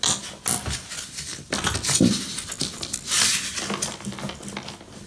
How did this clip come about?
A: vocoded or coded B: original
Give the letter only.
B